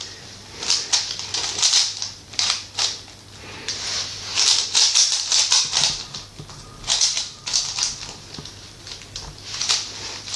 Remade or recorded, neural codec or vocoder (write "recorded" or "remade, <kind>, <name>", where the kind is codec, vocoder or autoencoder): recorded